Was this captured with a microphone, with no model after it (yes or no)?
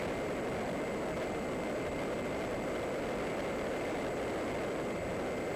yes